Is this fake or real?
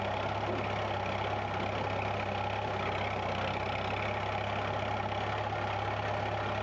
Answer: real